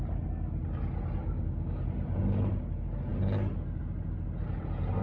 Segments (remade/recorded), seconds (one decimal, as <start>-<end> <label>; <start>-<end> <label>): 0.0-1.2 recorded; 1.2-1.8 remade; 1.8-5.0 recorded